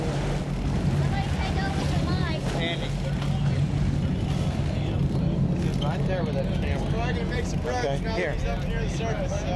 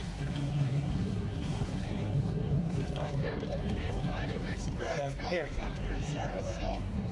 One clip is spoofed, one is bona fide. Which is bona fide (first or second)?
first